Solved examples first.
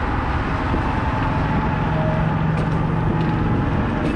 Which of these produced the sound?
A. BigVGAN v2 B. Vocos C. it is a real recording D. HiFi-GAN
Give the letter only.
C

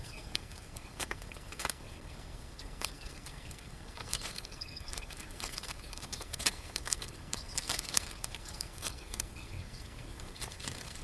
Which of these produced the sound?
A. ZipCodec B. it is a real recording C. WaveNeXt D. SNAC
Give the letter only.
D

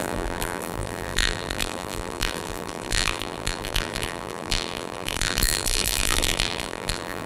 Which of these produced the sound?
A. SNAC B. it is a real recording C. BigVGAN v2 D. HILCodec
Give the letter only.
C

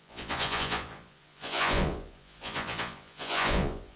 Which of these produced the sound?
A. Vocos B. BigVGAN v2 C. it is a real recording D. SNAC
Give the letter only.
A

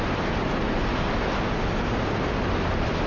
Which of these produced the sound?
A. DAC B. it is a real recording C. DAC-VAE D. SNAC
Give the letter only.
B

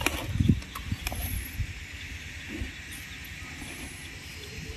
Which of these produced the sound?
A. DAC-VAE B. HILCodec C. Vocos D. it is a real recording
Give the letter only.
D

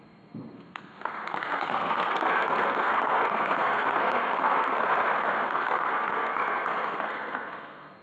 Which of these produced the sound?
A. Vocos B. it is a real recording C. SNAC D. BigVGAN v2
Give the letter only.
C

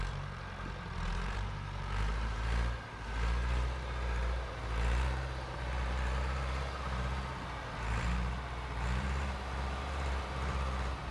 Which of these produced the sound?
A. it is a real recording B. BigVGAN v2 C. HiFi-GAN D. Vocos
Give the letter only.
B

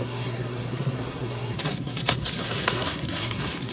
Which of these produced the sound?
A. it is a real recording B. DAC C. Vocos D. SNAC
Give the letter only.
D